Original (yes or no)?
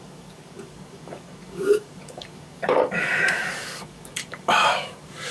no